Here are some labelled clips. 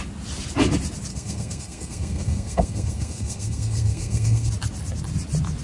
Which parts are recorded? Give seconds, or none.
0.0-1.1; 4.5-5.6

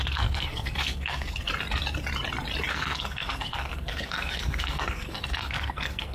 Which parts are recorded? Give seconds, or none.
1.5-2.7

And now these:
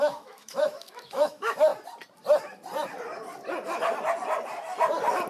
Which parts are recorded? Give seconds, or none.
1.7-5.3

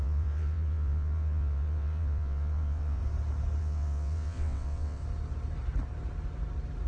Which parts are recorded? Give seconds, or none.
3.0-3.6; 5.0-6.9

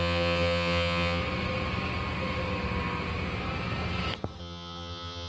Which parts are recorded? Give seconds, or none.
1.2-4.4

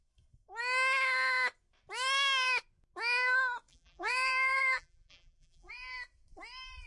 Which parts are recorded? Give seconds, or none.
0.0-3.7; 5.7-6.9